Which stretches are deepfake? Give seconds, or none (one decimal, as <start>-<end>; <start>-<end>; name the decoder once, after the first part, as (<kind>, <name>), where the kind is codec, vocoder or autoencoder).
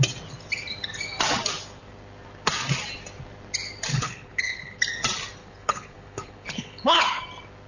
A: 3.9-4.8 (codec, HILCodec); 5.4-7.2